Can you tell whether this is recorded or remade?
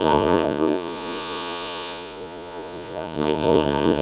remade